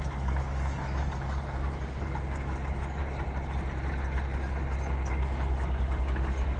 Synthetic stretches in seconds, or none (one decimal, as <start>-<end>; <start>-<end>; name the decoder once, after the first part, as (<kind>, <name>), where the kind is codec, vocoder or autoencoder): 0.0-3.0 (codec, DAC); 5.1-6.6